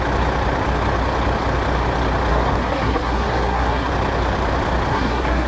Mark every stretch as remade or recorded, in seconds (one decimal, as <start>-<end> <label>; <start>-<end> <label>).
0.0-2.3 recorded; 2.3-3.9 remade; 3.9-4.9 recorded; 4.9-5.5 remade